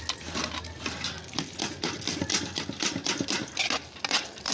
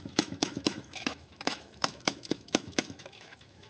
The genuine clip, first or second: first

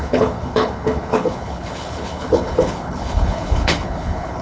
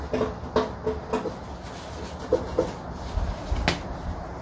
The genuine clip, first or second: second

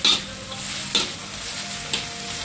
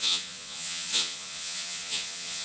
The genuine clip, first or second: first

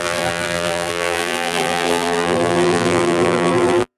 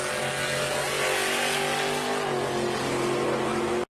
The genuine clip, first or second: second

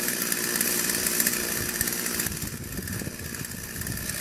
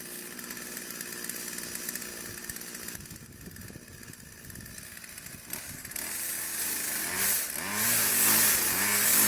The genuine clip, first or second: second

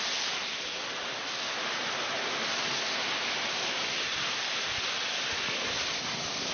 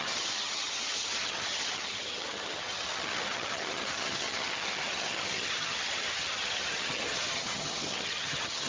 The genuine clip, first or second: first